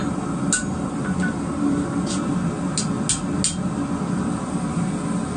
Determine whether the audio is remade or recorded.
recorded